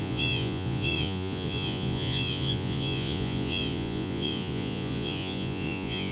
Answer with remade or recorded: remade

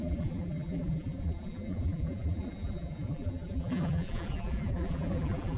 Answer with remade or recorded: remade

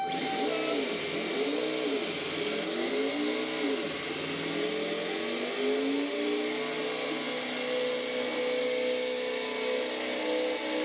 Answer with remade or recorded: recorded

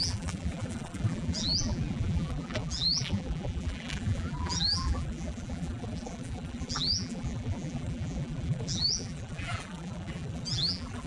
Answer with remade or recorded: remade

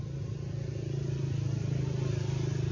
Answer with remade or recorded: recorded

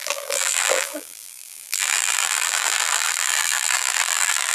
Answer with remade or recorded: remade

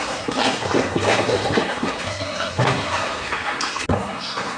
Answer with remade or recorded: remade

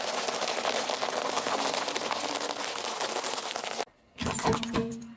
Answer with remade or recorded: recorded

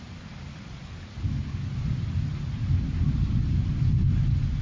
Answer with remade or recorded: recorded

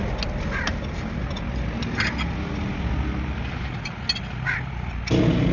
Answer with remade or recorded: recorded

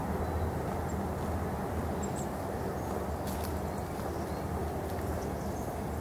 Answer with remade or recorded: recorded